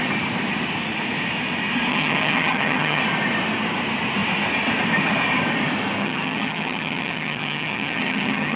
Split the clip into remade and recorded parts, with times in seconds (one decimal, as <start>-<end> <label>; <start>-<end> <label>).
0.0-1.9 recorded; 1.9-3.0 remade; 3.0-6.0 recorded; 6.0-8.6 remade